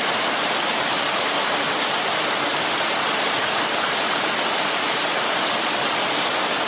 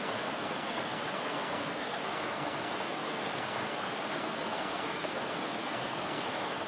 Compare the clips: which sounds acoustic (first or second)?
first